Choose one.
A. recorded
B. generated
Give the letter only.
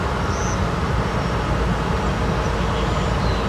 A